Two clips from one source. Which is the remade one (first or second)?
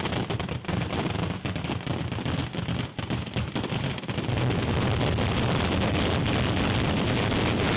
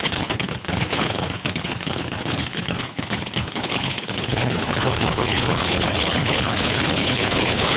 second